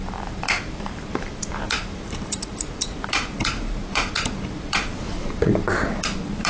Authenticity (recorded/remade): remade